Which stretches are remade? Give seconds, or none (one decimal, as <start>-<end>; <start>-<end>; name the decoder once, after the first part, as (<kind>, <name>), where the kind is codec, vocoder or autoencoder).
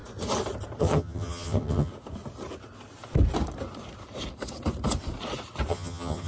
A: 0.8-1.9 (vocoder, HiFi-GAN); 5.7-6.3